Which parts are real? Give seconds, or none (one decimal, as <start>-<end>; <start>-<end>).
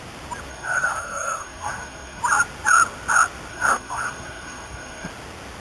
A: 0.0-0.5; 2.2-3.5; 5.1-5.6